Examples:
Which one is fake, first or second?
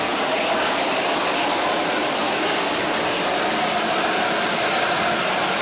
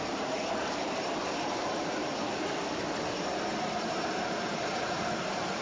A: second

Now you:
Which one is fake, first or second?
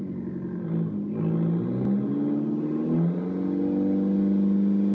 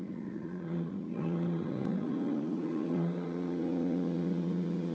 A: second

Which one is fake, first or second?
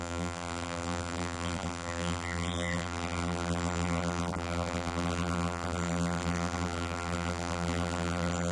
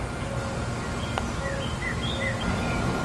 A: first